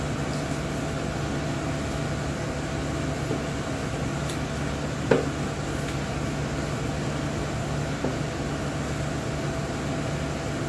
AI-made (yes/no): no